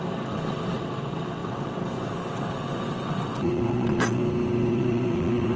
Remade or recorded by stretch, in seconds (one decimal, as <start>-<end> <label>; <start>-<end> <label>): 0.0-4.2 remade; 4.2-4.7 recorded; 4.7-5.6 remade